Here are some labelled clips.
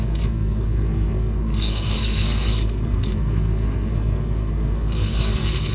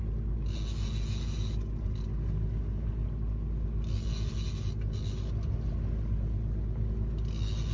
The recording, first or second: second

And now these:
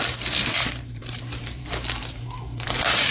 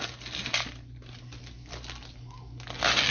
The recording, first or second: second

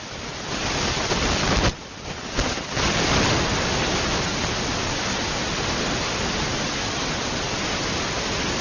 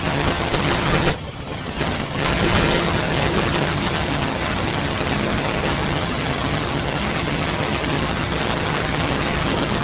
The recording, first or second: first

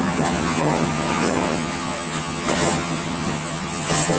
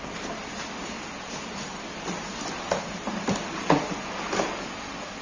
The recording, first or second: second